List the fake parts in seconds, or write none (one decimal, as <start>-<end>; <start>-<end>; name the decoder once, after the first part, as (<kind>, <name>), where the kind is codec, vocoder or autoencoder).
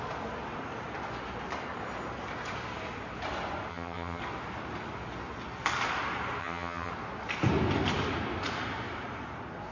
3.7-4.2 (vocoder, HiFi-GAN); 6.4-6.9